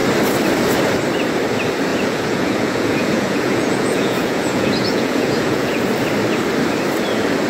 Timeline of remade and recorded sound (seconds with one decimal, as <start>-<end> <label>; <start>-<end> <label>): 0.0-1.9 recorded; 1.9-5.8 remade; 5.8-7.5 recorded